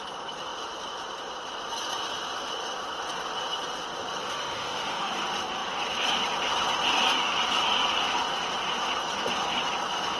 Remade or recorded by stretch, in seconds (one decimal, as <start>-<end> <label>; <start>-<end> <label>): 0.0-4.2 recorded; 4.2-5.1 remade; 5.1-10.2 recorded